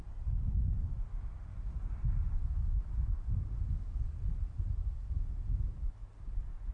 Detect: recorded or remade recorded